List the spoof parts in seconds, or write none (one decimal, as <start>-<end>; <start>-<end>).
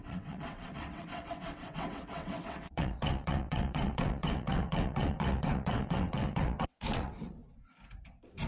0.0-7.4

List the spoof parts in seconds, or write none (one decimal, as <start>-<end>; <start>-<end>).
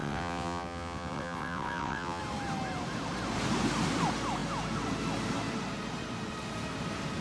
0.0-2.2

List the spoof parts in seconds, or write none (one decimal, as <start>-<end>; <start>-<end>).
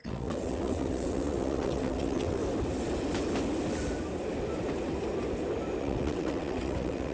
0.0-2.4; 5.8-7.1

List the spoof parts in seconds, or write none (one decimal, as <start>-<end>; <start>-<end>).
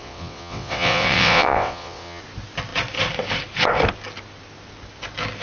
0.0-2.2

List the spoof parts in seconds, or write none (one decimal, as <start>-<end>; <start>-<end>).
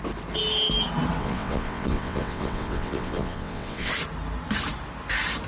1.2-3.9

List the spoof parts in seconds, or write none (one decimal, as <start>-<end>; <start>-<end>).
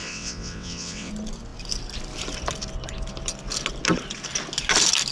0.0-1.1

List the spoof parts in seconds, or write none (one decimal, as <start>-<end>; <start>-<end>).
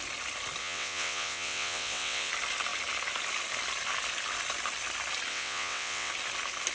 0.6-2.3; 5.3-6.1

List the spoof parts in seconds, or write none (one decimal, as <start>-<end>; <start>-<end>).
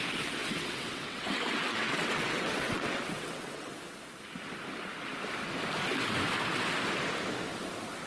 0.4-3.7